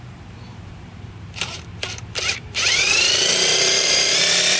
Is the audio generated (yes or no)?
yes